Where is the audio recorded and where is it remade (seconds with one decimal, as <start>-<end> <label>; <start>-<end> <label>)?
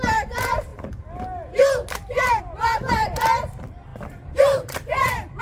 0.0-3.9 recorded; 3.9-5.4 remade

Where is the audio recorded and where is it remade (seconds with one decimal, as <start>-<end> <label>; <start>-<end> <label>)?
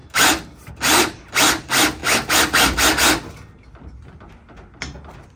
0.0-5.4 recorded